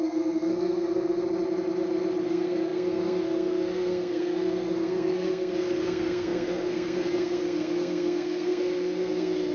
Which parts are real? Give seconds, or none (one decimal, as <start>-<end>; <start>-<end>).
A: 1.2-2.3